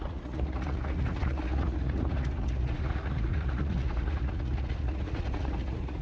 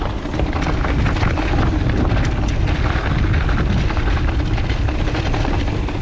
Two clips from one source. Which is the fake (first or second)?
first